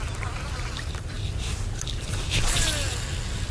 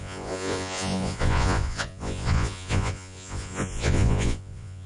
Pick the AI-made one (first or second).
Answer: second